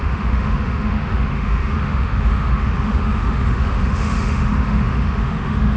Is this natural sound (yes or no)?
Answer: no